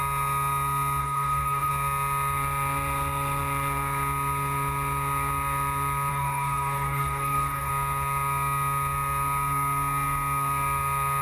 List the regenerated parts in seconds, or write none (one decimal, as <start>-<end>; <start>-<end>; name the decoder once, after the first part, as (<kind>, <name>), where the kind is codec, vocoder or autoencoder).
1.0-1.7 (codec, DAC); 6.1-7.7